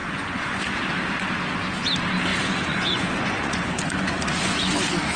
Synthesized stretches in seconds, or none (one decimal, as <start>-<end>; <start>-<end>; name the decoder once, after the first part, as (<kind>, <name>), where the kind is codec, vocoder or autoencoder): 0.0-0.6 (vocoder, Vocos); 2.3-4.7